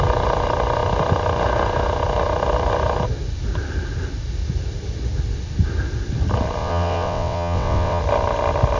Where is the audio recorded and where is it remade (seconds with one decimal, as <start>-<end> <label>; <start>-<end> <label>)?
0.0-6.6 recorded; 6.6-8.0 remade; 8.0-8.8 recorded